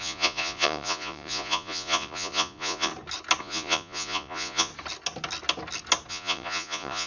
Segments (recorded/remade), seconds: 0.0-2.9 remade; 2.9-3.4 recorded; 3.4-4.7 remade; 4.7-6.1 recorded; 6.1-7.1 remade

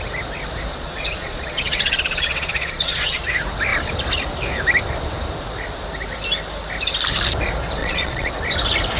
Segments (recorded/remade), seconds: 0.0-0.7 recorded; 0.7-3.2 remade; 3.2-7.8 recorded; 7.8-8.3 remade; 8.3-9.0 recorded

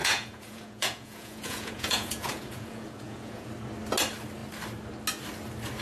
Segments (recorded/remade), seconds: 0.0-3.5 remade; 3.5-5.8 recorded

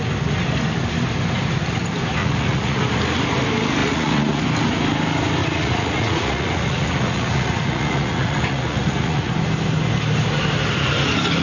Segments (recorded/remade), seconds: 0.0-2.2 recorded; 2.2-2.8 remade; 2.8-3.8 recorded; 3.8-4.4 remade; 4.4-5.4 recorded; 5.4-9.3 remade; 9.3-11.4 recorded

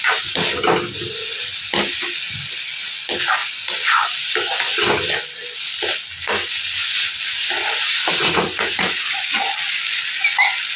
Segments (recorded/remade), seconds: 0.0-7.6 recorded; 7.6-9.2 remade; 9.2-10.8 recorded

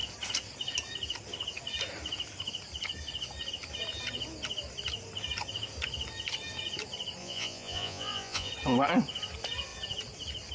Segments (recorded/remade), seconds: 0.0-7.2 recorded; 7.2-8.5 remade; 8.5-10.5 recorded

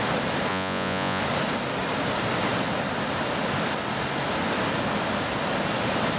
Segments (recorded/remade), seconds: 0.0-0.5 recorded; 0.5-1.2 remade; 1.2-6.2 recorded

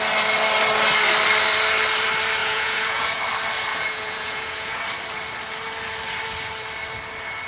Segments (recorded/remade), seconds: 0.0-2.4 recorded; 2.4-3.2 remade; 3.2-3.7 recorded; 3.7-4.8 remade; 4.8-7.5 recorded